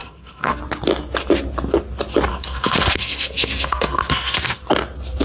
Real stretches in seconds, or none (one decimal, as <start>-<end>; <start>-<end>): 0.6-2.3; 4.6-5.2

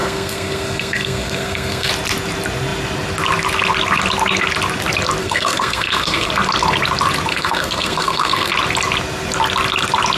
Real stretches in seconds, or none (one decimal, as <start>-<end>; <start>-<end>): 1.9-5.2; 6.3-7.3; 8.5-10.2

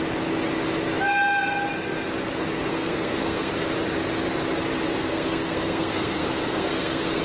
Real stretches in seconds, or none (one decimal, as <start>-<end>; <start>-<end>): 0.0-2.7; 3.5-5.1

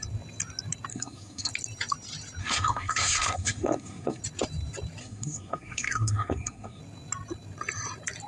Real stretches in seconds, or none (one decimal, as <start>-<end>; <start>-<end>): 0.0-0.9; 1.5-2.4; 4.2-5.0; 6.8-8.3